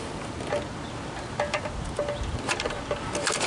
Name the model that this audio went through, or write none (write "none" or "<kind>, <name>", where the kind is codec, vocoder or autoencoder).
none